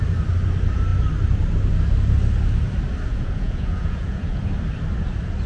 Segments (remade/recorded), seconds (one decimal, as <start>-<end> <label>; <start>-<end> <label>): 0.0-3.1 recorded; 3.1-4.4 remade; 4.4-5.5 recorded